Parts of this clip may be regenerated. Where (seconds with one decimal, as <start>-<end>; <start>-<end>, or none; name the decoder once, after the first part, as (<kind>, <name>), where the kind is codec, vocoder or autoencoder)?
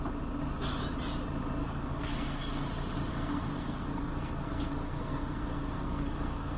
1.6-2.7 (codec, SNAC); 3.1-6.6